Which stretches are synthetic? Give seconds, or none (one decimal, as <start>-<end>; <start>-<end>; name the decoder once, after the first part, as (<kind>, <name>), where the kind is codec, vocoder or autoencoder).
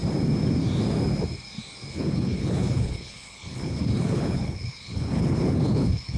1.9-6.2 (codec, HILCodec)